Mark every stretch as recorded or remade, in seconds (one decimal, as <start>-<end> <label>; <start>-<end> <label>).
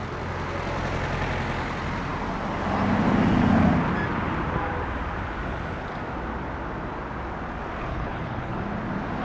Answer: 0.0-7.9 recorded; 7.9-8.6 remade; 8.6-9.2 recorded